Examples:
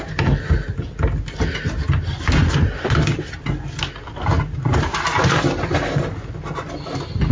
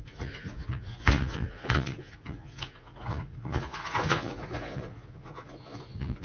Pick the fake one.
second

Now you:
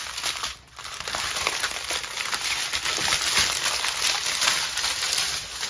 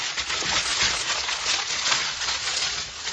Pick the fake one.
second